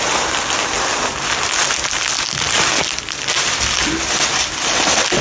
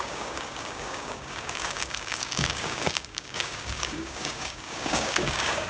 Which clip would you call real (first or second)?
first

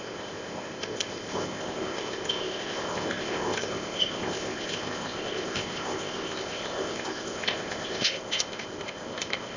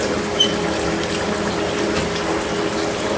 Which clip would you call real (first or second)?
second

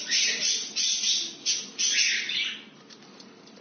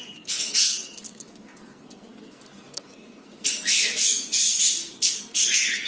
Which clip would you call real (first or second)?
first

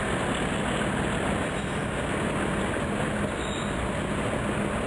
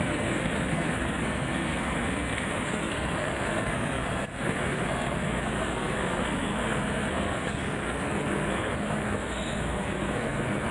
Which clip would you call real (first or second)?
first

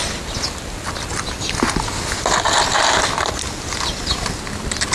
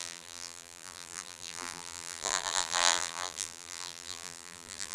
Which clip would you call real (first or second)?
first